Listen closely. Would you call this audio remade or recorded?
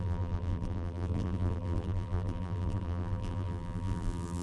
remade